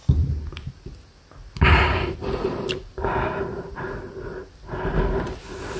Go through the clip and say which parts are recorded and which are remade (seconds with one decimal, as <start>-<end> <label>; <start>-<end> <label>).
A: 0.0-2.2 recorded; 2.2-5.8 remade